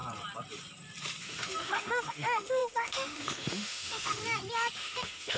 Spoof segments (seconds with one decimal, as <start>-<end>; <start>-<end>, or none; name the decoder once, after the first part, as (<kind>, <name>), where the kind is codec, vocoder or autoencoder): 1.2-4.2 (autoencoder, DAC-VAE); 4.8-5.4